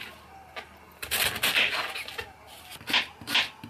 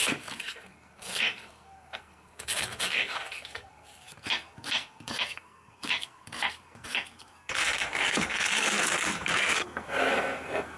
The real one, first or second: first